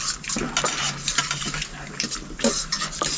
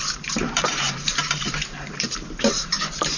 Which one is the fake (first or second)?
second